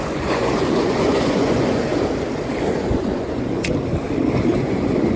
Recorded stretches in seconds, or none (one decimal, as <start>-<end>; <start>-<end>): 1.9-2.7; 3.7-4.4